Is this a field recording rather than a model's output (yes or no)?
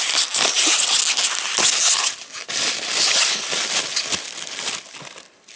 yes